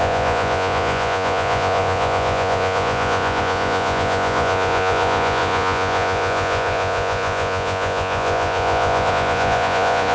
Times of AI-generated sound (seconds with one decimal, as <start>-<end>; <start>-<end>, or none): 0.0-10.1